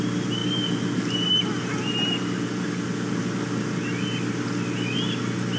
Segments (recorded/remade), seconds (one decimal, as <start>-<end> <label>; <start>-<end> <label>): 0.0-5.6 recorded